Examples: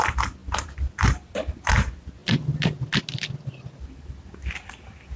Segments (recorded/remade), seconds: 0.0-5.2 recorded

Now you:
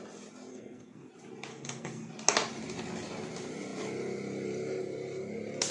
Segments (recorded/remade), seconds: 0.0-0.5 recorded; 0.5-1.1 remade; 1.1-1.5 recorded; 1.5-2.1 remade; 2.1-5.7 recorded

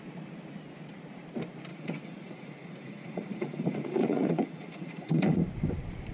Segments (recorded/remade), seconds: 0.0-1.7 recorded; 1.7-5.4 remade; 5.4-6.1 recorded

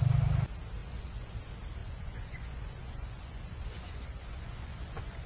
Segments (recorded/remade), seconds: 0.0-0.8 recorded; 0.8-1.3 remade; 1.3-1.8 recorded; 1.8-5.3 remade

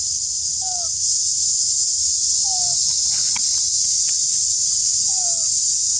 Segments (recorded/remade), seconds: 0.0-6.0 recorded

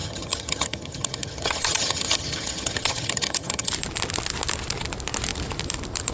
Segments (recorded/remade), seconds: 0.0-3.7 remade; 3.7-6.1 recorded

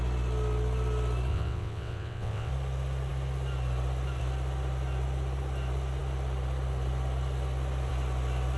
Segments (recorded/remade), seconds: 0.0-1.3 recorded; 1.3-2.5 remade; 2.5-8.6 recorded

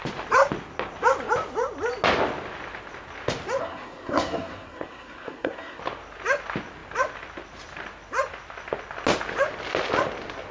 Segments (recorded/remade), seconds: 0.0-3.6 recorded; 3.6-5.8 remade; 5.8-10.5 recorded